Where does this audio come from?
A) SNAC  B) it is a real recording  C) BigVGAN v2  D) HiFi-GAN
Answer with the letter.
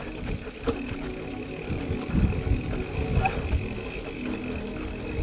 B